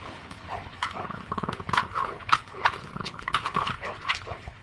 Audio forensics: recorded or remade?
remade